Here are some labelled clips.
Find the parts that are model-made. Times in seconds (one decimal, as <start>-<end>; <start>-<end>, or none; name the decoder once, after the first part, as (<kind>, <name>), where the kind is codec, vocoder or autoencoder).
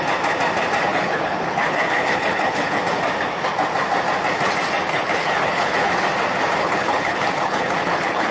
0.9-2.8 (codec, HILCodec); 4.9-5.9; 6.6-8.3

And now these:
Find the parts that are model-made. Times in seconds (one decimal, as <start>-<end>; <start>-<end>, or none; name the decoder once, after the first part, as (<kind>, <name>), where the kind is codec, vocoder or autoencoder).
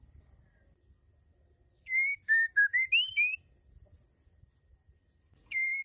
none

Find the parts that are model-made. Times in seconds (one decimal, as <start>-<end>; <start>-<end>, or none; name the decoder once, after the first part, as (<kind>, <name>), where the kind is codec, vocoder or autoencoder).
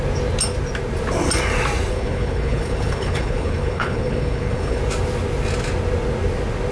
1.9-4.8 (codec, HILCodec)